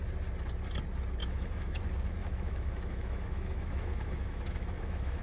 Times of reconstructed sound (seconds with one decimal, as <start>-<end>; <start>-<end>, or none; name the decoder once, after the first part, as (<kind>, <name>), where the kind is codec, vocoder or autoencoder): 1.2-1.8 (autoencoder, DAC-VAE); 2.2-5.2